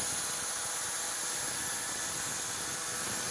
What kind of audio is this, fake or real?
real